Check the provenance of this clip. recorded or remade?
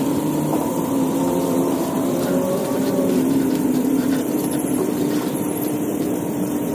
remade